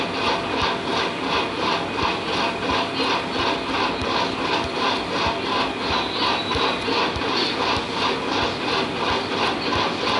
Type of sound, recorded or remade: recorded